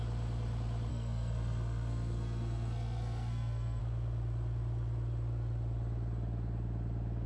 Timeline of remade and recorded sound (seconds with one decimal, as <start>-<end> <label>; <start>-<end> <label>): 0.0-0.9 recorded; 0.9-3.8 remade; 3.8-7.3 recorded